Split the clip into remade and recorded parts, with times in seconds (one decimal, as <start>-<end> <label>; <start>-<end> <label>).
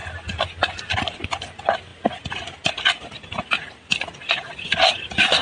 0.0-5.4 recorded